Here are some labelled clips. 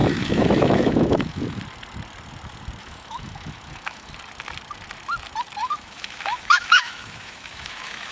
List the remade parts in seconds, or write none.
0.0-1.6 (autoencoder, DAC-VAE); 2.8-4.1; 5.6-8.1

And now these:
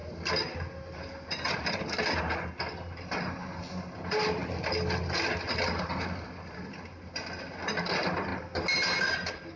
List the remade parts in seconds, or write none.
none

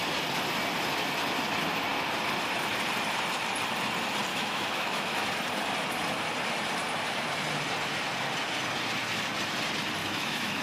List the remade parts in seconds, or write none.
4.3-5.2 (autoencoder, DAC-VAE); 10.0-10.6

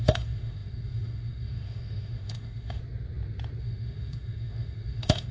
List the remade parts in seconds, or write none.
0.0-2.8 (autoencoder, DAC-VAE); 3.6-5.3

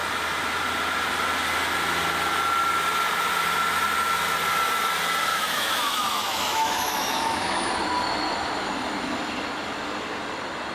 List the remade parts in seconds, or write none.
5.3-7.7 (autoencoder, DAC-VAE)